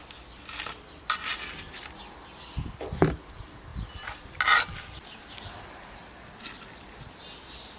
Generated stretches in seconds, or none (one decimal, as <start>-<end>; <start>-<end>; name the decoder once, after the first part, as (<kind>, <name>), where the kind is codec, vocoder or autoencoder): none